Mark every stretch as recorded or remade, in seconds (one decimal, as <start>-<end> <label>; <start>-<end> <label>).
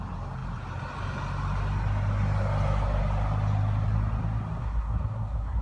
0.0-4.6 recorded; 4.6-5.6 remade